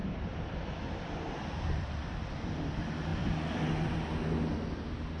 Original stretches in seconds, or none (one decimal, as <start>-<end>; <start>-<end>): 2.7-3.1; 3.7-5.2